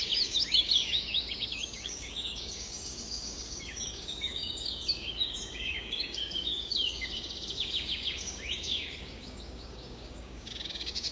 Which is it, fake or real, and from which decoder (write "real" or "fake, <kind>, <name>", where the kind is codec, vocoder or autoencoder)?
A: fake, codec, DAC